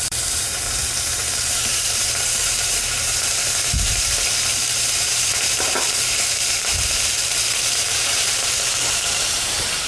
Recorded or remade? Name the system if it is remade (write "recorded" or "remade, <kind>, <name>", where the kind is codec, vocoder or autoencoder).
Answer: remade, vocoder, BigVGAN v2